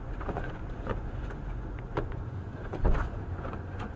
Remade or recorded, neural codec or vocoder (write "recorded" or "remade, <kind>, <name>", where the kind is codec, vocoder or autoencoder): remade, vocoder, Vocos